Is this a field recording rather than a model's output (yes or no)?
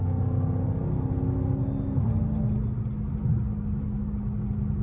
yes